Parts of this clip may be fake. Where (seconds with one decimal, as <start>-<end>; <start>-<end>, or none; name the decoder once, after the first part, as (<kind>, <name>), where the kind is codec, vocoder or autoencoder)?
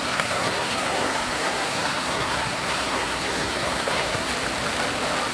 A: 0.0-4.3 (codec, SNAC)